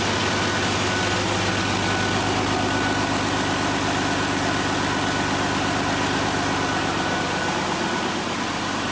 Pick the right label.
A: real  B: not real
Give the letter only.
A